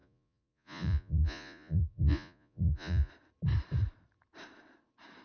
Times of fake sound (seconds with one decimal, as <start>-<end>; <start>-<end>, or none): 0.0-3.1